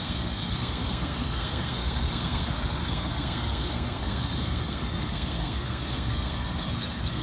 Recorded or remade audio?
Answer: remade